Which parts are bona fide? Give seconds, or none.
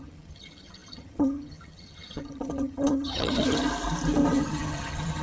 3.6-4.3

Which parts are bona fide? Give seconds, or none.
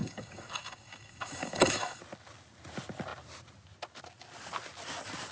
2.0-5.3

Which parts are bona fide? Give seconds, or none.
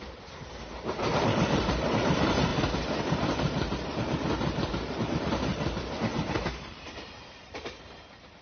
2.5-3.0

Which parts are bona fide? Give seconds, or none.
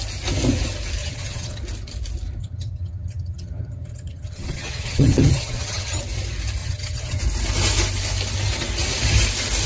0.0-1.0; 1.6-2.4; 6.0-6.6; 7.2-9.7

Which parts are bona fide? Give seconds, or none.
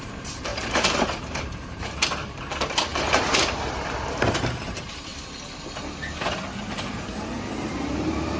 5.1-6.8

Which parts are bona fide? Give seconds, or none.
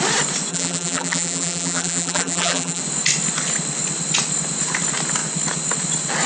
0.0-0.5; 2.8-6.3